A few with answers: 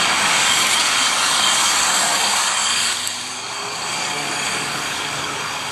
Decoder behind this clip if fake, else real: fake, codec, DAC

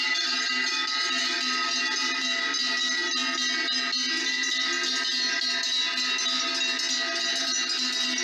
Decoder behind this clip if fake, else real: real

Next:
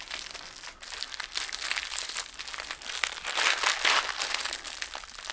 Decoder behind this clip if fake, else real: real